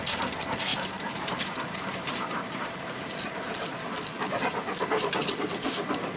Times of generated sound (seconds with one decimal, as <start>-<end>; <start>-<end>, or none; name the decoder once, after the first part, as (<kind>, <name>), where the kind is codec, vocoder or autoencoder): 0.7-4.4 (vocoder, BigVGAN v2)

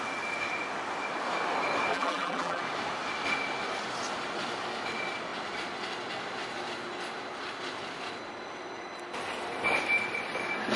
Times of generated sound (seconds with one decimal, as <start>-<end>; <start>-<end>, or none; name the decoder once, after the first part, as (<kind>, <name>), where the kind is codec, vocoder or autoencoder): 1.9-2.6 (vocoder, BigVGAN v2)

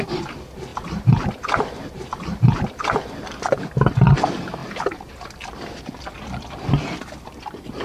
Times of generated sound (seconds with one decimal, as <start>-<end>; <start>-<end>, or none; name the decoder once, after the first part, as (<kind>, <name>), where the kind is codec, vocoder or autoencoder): 0.7-3.0 (vocoder, BigVGAN v2)

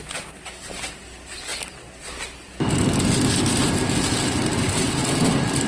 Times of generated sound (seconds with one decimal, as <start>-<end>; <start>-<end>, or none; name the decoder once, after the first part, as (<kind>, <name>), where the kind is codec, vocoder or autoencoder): none